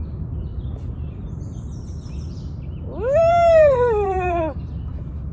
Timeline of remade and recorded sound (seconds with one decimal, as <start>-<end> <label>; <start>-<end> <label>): 0.0-0.5 recorded; 0.5-1.4 remade; 1.4-3.2 recorded; 3.2-4.8 remade; 4.8-5.3 recorded